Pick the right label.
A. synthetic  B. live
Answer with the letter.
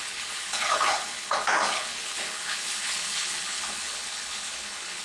A